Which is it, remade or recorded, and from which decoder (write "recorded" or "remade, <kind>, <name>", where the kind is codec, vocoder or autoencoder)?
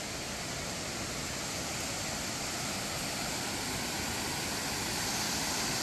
recorded